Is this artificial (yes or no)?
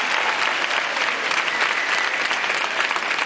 no